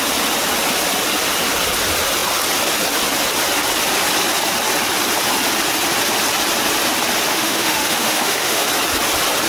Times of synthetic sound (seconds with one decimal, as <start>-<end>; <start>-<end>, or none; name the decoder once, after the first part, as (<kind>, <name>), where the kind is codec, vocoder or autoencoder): 7.3-8.7 (autoencoder, DAC-VAE)